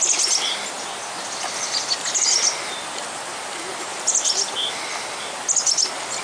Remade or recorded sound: recorded